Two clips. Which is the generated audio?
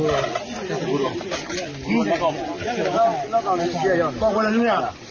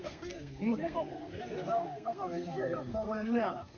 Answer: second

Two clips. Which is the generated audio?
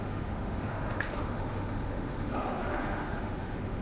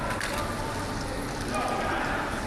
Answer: first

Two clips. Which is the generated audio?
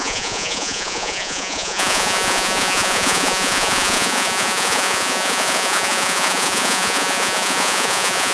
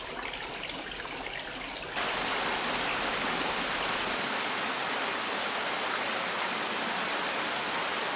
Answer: first